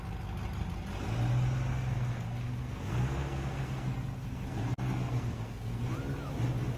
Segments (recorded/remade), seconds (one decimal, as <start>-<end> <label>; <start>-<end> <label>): 0.0-1.7 recorded; 1.7-5.8 remade; 5.8-6.8 recorded